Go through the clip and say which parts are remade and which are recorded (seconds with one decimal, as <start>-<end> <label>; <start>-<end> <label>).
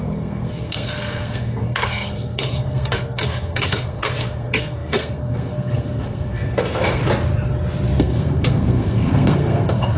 0.0-7.0 remade; 7.0-8.0 recorded; 8.0-10.0 remade